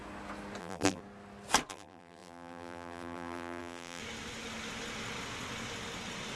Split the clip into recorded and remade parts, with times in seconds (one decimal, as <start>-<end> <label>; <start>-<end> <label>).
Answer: 0.0-0.6 recorded; 0.6-1.0 remade; 1.0-1.7 recorded; 1.7-4.0 remade; 4.0-6.4 recorded